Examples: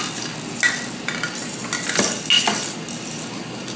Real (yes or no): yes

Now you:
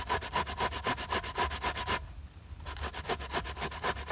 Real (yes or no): yes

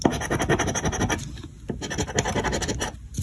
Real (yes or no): yes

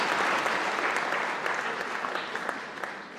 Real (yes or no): yes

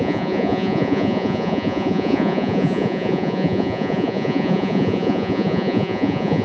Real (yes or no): no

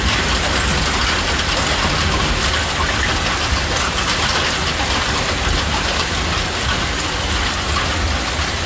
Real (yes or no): yes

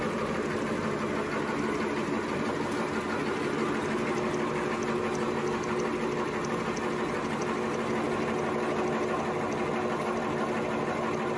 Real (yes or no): yes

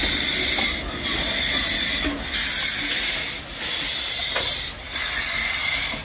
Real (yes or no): yes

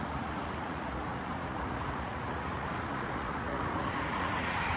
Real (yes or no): no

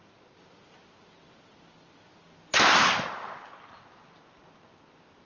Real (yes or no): yes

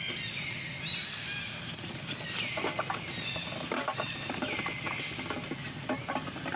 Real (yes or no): yes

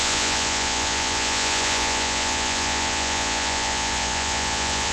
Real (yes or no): no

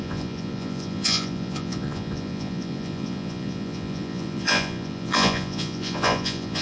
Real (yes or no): no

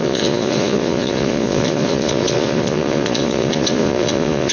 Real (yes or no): no